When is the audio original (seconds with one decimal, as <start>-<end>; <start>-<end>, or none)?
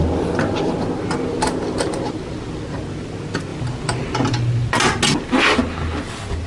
0.0-6.5